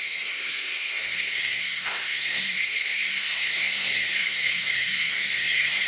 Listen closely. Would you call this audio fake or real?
fake